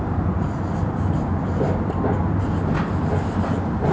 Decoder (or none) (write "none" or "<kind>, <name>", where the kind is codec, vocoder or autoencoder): none